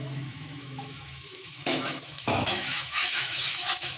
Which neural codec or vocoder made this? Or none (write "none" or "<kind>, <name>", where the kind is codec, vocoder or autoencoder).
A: autoencoder, DAC-VAE